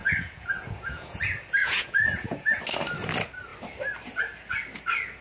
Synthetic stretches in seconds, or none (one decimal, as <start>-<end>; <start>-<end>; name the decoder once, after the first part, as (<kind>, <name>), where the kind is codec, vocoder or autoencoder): 0.0-1.2 (vocoder, Vocos); 1.6-2.6